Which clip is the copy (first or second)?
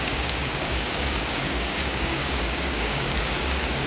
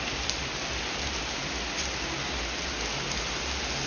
first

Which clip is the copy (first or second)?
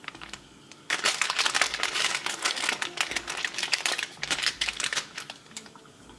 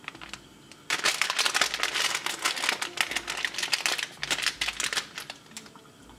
first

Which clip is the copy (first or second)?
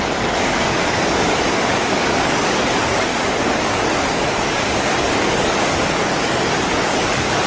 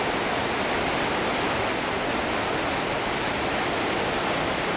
first